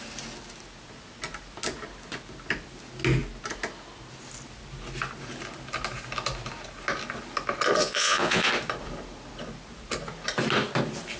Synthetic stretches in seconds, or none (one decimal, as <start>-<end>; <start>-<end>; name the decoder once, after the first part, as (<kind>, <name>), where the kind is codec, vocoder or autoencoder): 7.8-8.5 (vocoder, Vocos)